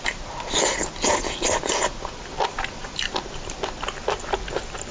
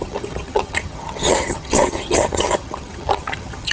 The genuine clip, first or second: first